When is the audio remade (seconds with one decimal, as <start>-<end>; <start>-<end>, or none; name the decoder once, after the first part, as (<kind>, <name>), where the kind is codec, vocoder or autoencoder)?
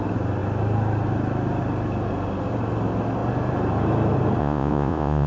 4.4-5.3 (vocoder, Vocos)